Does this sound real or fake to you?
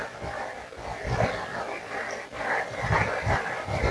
real